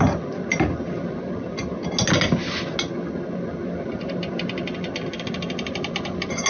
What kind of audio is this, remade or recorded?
recorded